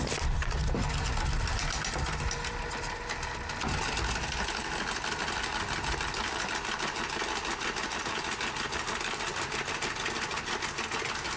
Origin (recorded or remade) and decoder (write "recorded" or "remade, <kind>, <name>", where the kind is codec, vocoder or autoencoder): recorded